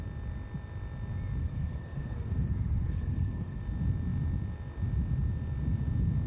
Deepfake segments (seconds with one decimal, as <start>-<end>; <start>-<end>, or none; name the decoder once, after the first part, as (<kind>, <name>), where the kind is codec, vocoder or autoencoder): 1.4-3.6 (codec, SNAC)